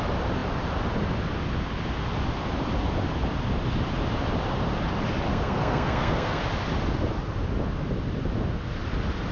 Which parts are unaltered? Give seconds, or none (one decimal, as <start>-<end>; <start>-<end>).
0.0-5.3; 6.4-9.3